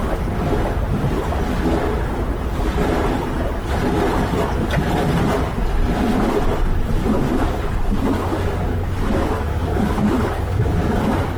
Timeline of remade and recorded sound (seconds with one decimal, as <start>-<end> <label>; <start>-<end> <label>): 0.0-7.0 recorded; 7.0-11.4 remade